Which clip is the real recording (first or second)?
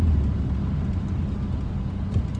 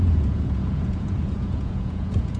first